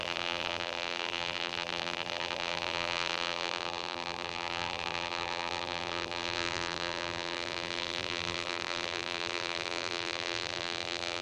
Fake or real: fake